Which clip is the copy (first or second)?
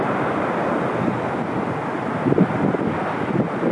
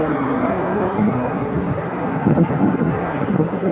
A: second